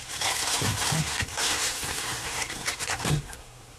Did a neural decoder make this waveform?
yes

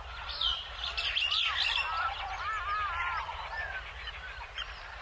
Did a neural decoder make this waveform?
no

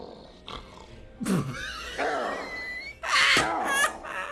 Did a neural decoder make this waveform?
no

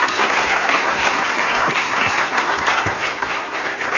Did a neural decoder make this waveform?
yes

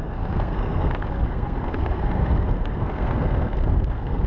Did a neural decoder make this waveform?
yes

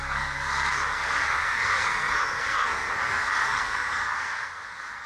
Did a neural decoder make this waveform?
yes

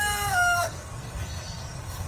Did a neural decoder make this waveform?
yes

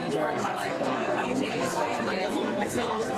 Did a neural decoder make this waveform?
yes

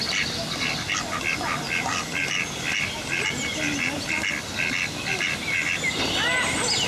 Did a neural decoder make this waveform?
no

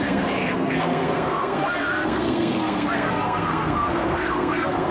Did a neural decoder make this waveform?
yes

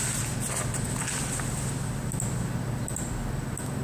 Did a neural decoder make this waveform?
no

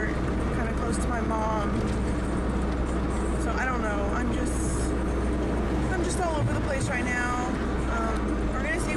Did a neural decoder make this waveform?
no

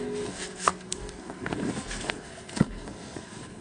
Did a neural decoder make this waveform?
yes